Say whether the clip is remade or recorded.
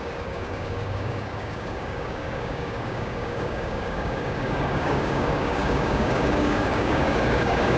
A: remade